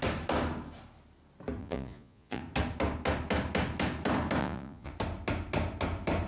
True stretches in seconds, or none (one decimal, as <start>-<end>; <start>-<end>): 0.0-1.6; 2.4-4.4; 4.9-6.3